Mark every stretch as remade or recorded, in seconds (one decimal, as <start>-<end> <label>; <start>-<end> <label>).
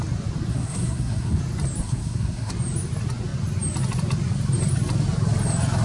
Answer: 0.0-0.5 recorded; 0.5-1.4 remade; 1.4-1.8 recorded; 1.8-2.5 remade; 2.5-5.8 recorded